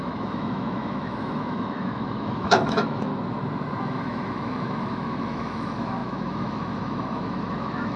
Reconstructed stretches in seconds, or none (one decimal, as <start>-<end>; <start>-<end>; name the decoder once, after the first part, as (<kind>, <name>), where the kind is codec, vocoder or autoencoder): 0.0-3.1 (autoencoder, DAC-VAE); 3.8-8.0